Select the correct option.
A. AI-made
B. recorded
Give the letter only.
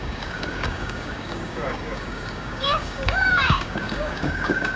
A